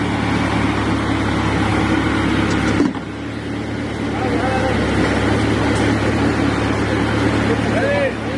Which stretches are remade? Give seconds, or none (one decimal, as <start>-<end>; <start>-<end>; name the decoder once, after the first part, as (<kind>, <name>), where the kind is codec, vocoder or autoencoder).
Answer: none